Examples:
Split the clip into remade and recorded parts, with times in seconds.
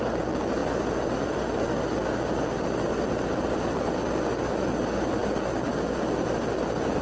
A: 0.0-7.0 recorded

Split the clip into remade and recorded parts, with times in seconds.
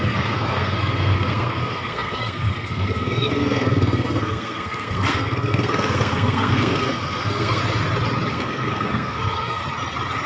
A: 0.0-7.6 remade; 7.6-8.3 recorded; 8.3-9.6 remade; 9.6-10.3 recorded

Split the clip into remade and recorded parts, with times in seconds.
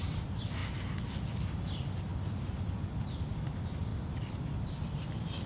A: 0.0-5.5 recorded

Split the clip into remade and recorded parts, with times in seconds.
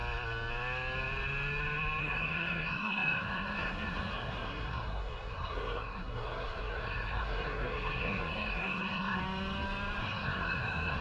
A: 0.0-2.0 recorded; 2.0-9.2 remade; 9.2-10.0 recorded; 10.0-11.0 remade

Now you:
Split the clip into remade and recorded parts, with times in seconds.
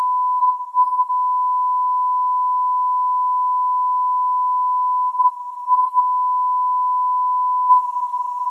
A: 0.0-0.4 recorded; 0.4-1.1 remade; 1.1-5.1 recorded; 5.1-6.0 remade; 6.0-7.7 recorded; 7.7-8.5 remade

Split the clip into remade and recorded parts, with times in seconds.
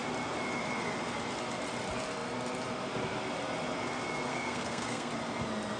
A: 0.0-4.3 recorded; 4.3-5.1 remade; 5.1-5.8 recorded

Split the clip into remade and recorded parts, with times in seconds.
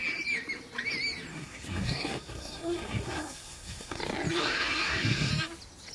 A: 0.0-1.3 recorded; 1.3-4.0 remade; 4.0-4.4 recorded; 4.4-5.3 remade; 5.3-5.9 recorded